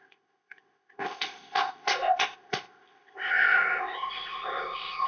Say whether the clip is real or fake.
fake